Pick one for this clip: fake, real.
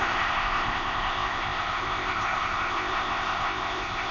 fake